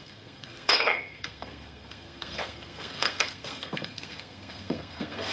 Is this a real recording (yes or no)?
no